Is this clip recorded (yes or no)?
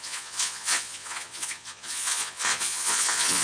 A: no